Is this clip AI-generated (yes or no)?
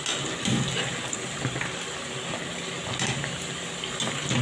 no